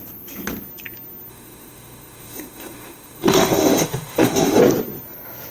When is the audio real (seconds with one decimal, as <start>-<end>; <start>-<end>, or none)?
0.0-1.3; 4.6-5.5